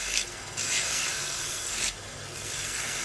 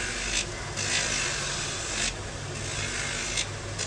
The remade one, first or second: first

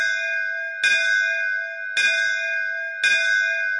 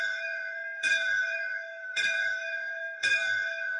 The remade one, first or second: second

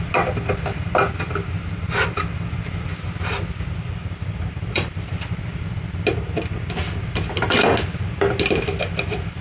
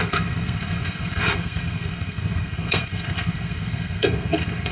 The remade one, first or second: second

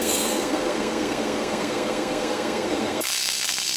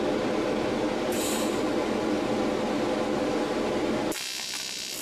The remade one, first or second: first